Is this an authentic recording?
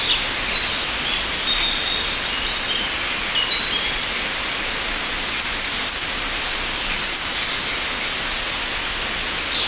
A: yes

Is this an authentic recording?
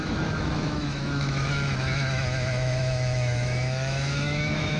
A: no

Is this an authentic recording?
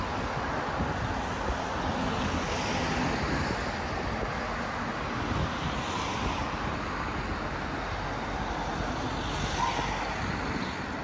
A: yes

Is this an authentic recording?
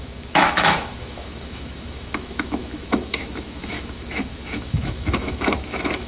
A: no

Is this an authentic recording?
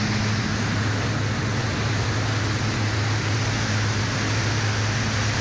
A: yes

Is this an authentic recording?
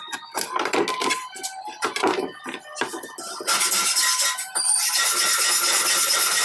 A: yes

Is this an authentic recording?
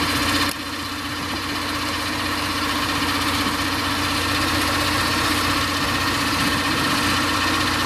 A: yes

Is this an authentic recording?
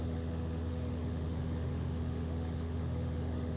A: no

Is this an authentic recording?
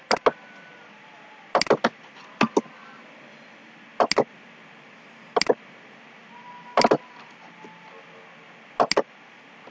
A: yes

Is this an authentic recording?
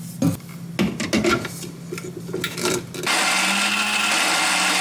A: yes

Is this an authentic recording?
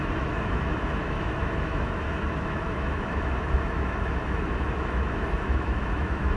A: no